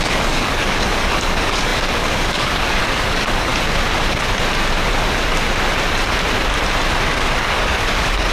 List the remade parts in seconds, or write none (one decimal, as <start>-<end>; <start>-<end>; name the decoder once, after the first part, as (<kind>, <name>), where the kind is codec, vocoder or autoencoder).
0.0-3.5 (codec, DAC); 7.0-8.3